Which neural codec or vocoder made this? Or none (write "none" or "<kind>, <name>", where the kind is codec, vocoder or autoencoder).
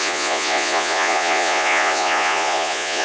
vocoder, Vocos